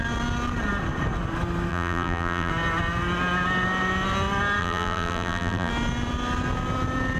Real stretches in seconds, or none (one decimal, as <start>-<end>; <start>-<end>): 0.0-1.7; 2.5-4.6; 5.7-7.2